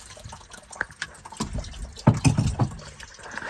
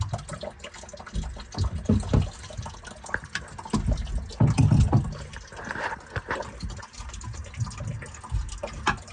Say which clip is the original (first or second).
second